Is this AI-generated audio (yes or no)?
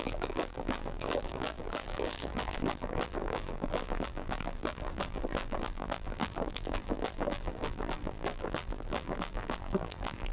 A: yes